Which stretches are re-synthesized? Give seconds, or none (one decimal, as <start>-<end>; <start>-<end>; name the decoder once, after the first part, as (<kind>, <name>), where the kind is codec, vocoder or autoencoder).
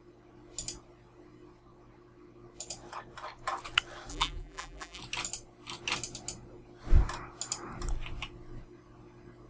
4.1-5.0 (vocoder, BigVGAN v2)